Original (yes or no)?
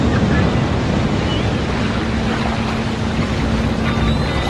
yes